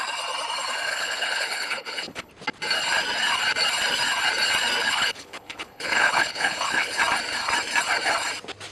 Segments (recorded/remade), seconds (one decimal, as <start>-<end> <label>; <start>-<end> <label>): 0.0-0.9 recorded; 0.9-2.3 remade; 2.3-4.8 recorded; 4.8-7.0 remade; 7.0-8.7 recorded